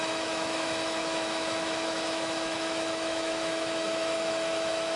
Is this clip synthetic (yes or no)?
yes